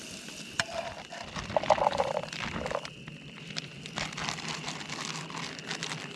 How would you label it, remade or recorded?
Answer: recorded